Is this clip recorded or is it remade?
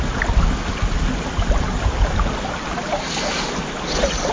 recorded